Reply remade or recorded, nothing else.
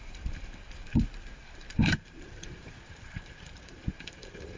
remade